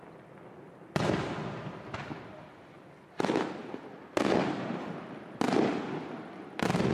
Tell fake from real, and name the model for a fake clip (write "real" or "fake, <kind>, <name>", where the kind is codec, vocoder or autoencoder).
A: real